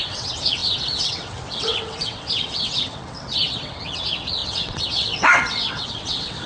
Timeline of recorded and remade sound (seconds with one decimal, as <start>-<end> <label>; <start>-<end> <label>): 0.0-6.5 remade